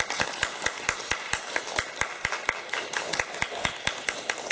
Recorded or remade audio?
recorded